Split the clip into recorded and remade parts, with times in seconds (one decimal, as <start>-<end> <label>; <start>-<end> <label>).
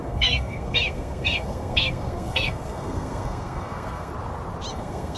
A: 0.0-4.1 remade; 4.1-4.7 recorded; 4.7-5.2 remade